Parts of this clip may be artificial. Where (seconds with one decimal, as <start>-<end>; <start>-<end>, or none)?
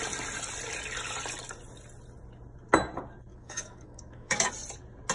3.3-4.5